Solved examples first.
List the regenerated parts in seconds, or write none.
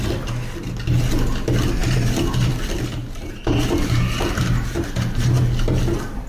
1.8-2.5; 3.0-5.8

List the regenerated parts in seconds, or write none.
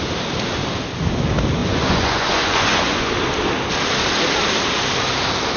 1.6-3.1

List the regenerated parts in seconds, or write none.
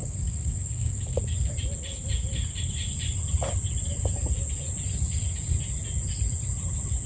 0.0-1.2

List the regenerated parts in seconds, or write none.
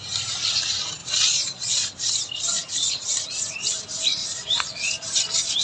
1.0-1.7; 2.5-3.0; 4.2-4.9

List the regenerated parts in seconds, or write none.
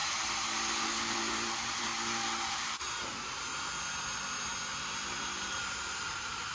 0.8-1.9; 2.5-3.5; 5.1-6.5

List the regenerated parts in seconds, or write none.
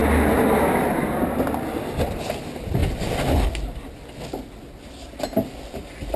none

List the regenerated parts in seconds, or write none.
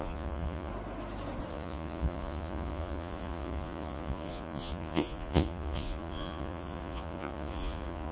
0.0-0.7; 1.5-8.1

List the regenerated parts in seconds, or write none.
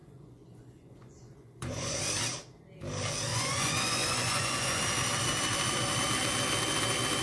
0.0-2.0; 3.3-4.8